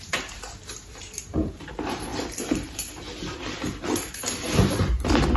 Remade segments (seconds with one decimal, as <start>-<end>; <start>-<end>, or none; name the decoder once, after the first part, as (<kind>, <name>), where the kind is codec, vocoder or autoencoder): 0.0-2.1 (vocoder, BigVGAN v2)